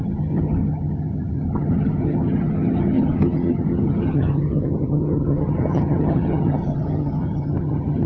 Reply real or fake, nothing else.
fake